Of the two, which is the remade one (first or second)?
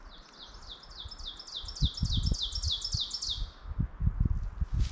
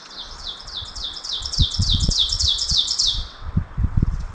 second